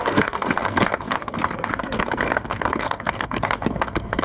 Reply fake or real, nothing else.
fake